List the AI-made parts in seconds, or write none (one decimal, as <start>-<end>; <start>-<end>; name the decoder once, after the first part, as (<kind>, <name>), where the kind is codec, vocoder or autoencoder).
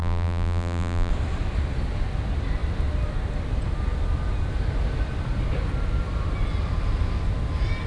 0.0-1.1 (vocoder, BigVGAN v2)